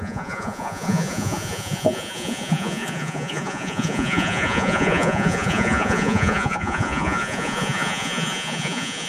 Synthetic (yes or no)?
yes